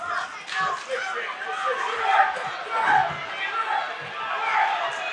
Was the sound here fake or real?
real